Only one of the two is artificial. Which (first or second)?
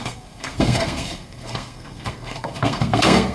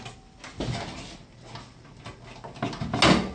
first